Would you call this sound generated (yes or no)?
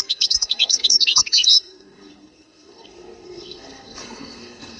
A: yes